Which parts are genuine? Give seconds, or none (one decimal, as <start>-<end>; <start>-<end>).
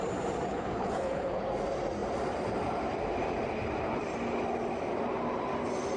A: 0.0-0.5; 1.4-6.0